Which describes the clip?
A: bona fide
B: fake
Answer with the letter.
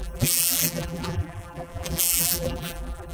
B